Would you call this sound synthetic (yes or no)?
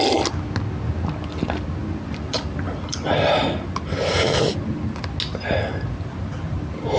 no